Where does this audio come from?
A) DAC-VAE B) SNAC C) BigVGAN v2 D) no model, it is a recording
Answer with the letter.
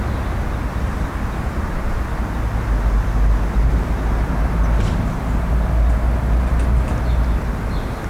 D